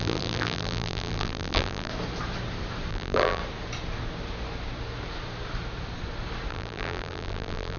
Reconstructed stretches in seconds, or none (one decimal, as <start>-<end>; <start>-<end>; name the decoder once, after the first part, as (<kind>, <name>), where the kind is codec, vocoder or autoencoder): 0.0-1.9 (vocoder, BigVGAN v2); 2.9-3.4; 6.5-7.8